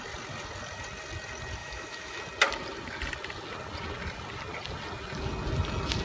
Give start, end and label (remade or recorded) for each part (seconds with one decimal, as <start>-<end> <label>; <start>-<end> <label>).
0.0-1.6 recorded; 1.6-2.2 remade; 2.2-6.0 recorded